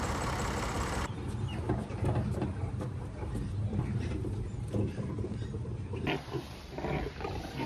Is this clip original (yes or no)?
no